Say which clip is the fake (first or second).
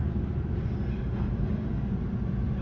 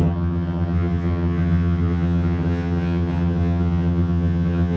second